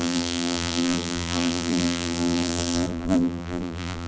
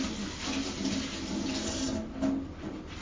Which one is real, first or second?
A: second